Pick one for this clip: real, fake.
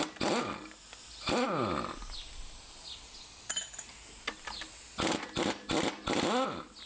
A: real